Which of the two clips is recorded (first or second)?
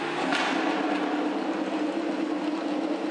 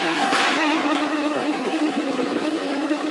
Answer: first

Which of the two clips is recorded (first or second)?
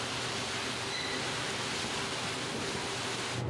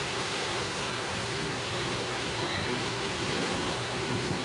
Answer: first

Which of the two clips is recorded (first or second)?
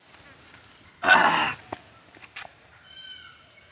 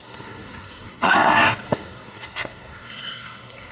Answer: first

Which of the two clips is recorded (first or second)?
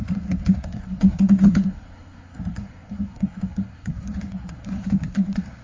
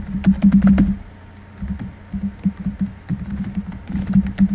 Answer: second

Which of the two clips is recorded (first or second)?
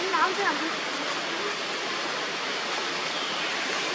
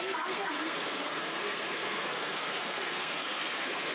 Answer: first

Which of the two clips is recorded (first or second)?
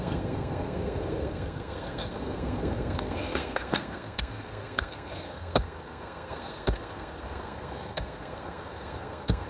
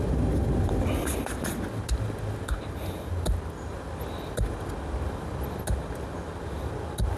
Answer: second